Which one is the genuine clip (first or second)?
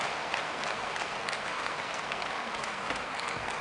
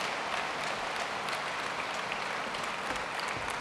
second